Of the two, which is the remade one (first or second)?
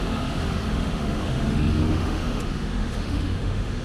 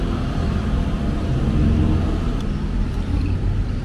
first